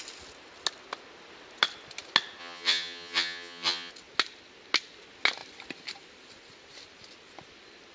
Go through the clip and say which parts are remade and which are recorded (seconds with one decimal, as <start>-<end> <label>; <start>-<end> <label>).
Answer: 0.0-2.4 recorded; 2.4-3.9 remade; 3.9-7.9 recorded